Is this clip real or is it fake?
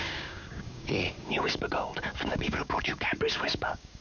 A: fake